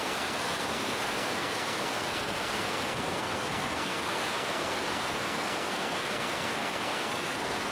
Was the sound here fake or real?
fake